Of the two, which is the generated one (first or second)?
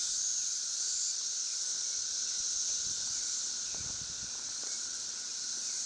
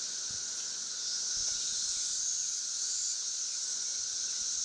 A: second